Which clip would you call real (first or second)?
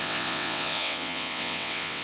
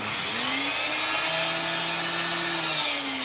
second